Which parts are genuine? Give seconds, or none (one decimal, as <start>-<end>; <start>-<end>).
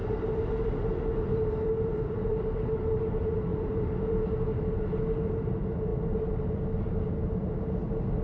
0.0-3.5; 4.6-8.2